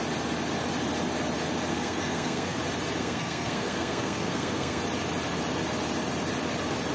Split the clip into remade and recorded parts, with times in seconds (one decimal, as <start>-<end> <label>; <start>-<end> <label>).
0.0-1.7 recorded; 1.7-2.6 remade; 2.6-3.0 recorded; 3.0-4.8 remade; 4.8-6.9 recorded